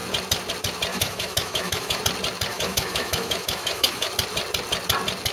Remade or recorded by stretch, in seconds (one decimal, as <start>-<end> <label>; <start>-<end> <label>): 0.0-0.9 recorded; 0.9-2.0 remade; 2.0-2.5 recorded; 2.5-4.1 remade; 4.1-5.3 recorded